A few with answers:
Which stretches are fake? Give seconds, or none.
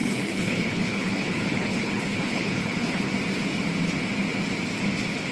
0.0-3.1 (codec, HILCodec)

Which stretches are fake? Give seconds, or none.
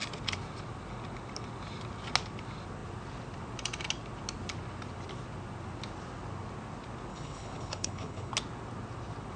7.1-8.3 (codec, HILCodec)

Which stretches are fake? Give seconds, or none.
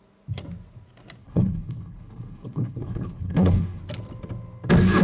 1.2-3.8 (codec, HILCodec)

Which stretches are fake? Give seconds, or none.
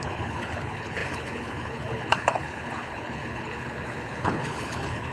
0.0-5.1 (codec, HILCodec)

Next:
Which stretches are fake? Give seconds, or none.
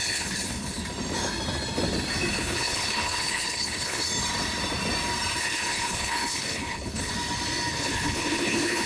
0.0-0.8 (codec, HILCodec); 2.3-4.1; 5.4-7.1; 7.7-8.9